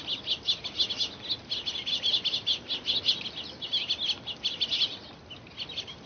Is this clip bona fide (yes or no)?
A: yes